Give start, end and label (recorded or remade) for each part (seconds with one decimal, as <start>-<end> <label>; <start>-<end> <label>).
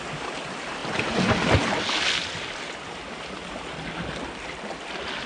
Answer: 0.0-5.3 recorded